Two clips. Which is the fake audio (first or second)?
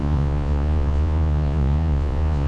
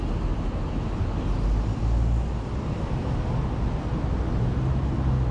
first